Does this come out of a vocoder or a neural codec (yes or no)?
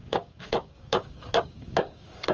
yes